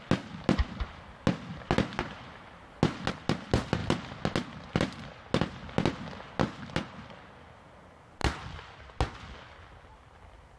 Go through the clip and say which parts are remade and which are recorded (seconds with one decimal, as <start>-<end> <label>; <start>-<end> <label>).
0.0-10.6 recorded